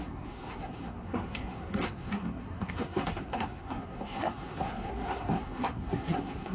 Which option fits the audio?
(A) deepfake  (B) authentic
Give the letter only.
A